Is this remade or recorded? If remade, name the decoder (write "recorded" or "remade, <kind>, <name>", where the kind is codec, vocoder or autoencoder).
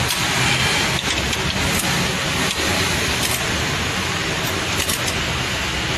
recorded